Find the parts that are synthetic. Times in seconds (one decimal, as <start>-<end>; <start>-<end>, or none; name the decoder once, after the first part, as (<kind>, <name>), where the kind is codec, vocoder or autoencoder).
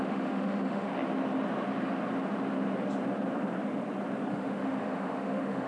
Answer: 0.0-0.9 (autoencoder, DAC-VAE); 4.3-5.7